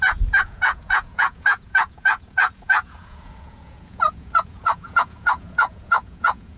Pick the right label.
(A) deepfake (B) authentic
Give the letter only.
A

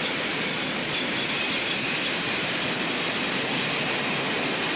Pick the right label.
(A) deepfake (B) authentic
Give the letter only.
B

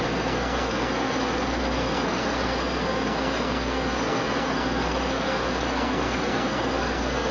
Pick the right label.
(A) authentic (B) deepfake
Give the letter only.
B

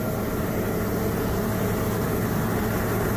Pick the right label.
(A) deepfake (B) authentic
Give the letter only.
B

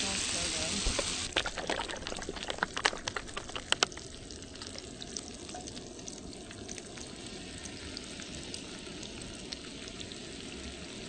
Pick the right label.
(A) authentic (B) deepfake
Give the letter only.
A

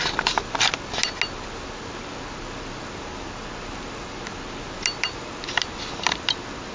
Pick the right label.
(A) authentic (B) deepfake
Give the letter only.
A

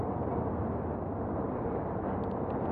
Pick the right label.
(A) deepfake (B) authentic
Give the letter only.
B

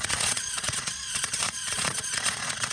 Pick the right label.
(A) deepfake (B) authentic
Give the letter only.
A